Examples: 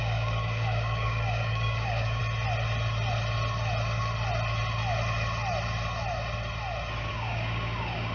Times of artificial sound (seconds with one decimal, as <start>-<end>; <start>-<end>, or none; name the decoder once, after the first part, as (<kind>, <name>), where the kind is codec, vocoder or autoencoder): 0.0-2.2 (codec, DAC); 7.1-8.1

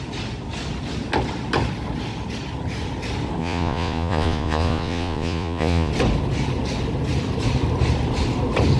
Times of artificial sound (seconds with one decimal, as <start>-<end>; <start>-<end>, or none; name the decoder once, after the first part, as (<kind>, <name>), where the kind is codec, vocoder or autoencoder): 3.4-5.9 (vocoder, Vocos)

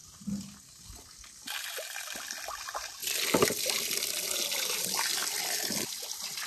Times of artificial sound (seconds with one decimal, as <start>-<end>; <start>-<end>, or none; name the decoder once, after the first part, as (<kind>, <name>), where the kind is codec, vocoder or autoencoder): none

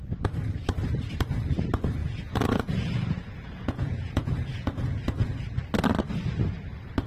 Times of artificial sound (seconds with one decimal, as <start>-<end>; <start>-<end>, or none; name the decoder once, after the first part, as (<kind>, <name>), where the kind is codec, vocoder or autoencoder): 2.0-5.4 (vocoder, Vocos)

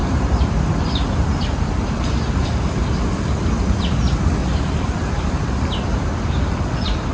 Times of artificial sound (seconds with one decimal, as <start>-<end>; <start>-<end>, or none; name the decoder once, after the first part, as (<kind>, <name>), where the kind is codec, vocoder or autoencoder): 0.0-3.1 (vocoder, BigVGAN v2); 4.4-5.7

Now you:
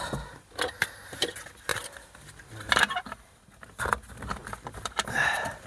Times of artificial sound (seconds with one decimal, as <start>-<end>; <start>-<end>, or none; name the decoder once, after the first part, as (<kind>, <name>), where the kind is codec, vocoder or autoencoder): none

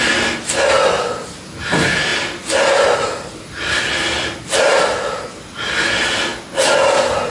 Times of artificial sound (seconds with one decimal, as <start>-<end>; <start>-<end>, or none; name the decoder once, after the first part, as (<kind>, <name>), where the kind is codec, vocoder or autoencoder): none

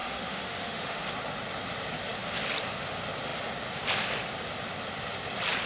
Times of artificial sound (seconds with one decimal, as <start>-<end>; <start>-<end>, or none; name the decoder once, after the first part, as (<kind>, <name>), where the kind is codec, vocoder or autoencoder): 0.0-1.0 (autoencoder, DAC-VAE)